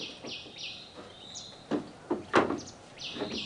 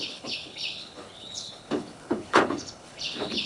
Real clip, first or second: first